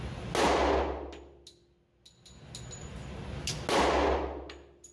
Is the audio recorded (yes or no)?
yes